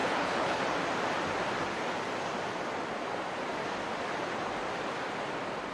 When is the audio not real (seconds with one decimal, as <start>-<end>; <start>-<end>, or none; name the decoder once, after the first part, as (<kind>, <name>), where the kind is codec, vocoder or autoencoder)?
0.0-0.6 (codec, HILCodec)